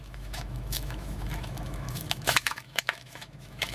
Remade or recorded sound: remade